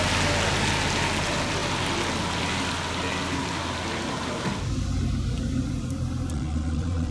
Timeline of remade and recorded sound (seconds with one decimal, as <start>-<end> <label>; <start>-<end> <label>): 0.0-6.3 recorded; 6.3-7.1 remade